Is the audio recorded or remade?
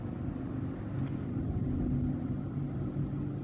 recorded